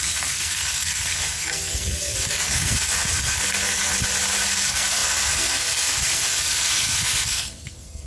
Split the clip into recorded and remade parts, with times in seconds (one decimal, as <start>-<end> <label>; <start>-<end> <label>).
0.0-3.9 remade; 3.9-4.5 recorded; 4.5-8.1 remade